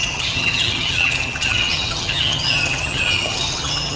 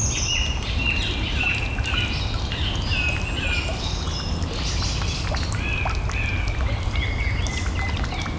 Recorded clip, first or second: second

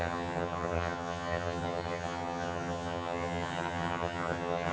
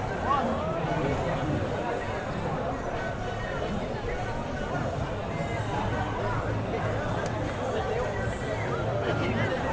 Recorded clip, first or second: second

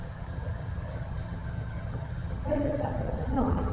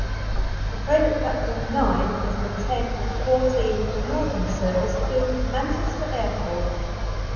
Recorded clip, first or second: second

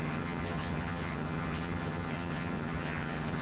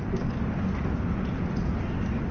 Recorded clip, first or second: second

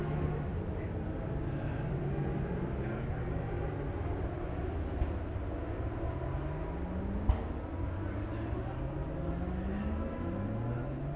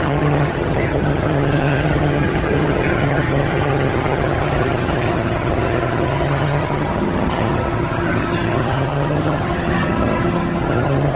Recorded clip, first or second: first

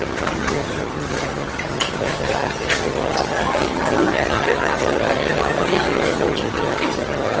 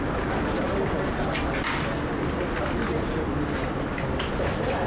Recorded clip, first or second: second